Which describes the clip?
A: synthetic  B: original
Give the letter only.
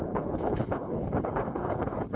A